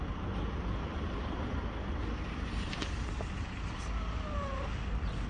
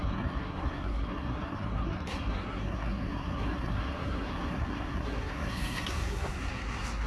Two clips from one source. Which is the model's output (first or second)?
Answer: second